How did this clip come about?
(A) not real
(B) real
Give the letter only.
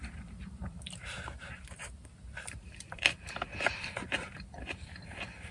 A